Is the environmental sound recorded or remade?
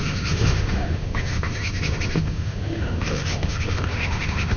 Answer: remade